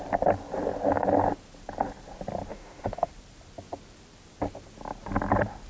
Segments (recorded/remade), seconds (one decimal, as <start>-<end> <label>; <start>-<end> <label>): 0.0-2.5 recorded; 2.5-3.1 remade; 3.1-5.7 recorded